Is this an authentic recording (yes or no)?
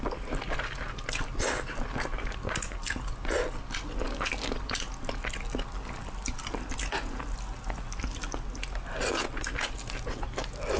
yes